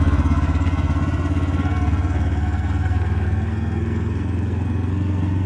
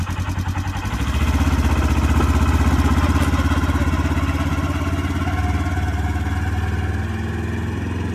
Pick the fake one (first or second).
first